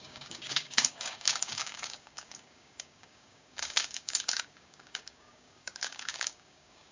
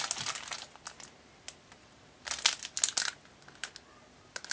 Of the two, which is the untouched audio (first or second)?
second